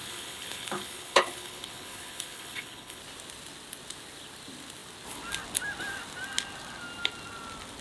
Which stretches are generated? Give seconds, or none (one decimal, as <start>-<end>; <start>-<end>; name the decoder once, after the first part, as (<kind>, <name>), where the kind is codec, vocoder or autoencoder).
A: 0.0-3.0 (codec, HILCodec)